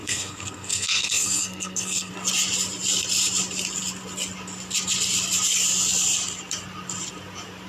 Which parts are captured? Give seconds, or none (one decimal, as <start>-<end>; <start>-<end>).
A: 2.1-7.7